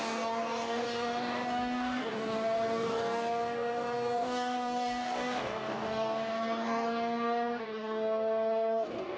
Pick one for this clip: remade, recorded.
remade